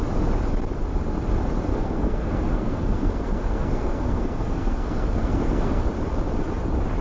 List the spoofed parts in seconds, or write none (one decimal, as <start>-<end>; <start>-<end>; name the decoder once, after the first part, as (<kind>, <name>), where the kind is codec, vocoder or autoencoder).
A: 1.7-5.8 (codec, SNAC)